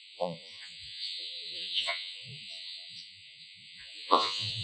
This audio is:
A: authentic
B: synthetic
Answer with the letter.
B